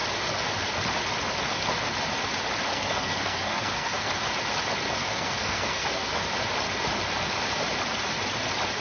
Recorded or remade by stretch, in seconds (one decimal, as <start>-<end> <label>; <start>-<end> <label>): 0.0-2.7 recorded; 2.7-4.2 remade; 4.2-5.0 recorded; 5.0-6.3 remade; 6.3-8.8 recorded